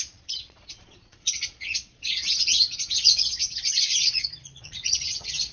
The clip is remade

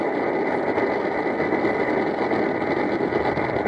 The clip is recorded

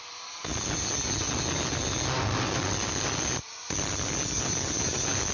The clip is recorded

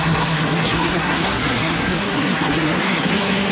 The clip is remade